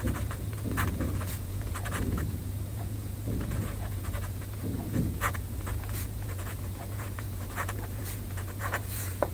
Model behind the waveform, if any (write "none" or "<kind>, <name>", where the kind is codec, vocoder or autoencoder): vocoder, Vocos